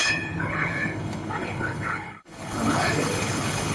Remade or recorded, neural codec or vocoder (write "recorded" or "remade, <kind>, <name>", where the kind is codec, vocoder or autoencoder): remade, codec, HILCodec